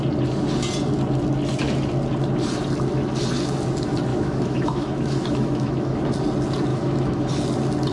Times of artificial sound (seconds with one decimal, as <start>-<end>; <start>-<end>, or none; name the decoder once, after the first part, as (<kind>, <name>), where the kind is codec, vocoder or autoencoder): 4.1-6.0 (autoencoder, DAC-VAE); 6.7-7.3